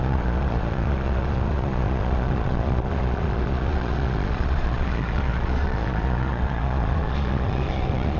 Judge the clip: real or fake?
fake